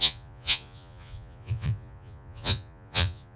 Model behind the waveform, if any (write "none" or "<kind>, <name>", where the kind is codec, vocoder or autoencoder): vocoder, Vocos